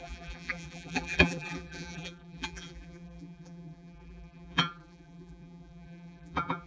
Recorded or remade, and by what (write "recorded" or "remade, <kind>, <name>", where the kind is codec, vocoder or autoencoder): remade, vocoder, BigVGAN v2